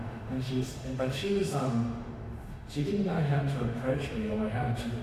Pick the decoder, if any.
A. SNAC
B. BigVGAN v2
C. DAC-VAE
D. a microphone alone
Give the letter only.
C